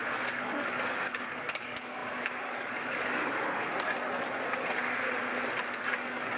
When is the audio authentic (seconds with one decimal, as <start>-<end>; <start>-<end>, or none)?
3.7-5.8